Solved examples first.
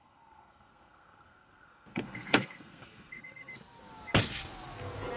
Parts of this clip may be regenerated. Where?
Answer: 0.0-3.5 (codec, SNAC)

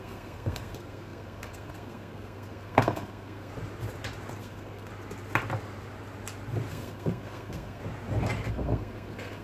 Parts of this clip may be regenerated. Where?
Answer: 0.0-3.5 (codec, SNAC); 4.4-4.9; 6.7-7.8; 8.5-9.4

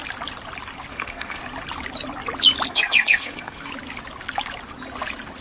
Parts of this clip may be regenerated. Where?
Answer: 0.9-1.4 (codec, SNAC); 2.7-3.7

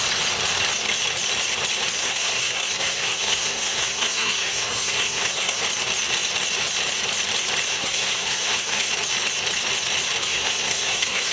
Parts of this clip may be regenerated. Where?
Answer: 2.0-5.6 (codec, SNAC); 7.7-8.9; 10.2-11.3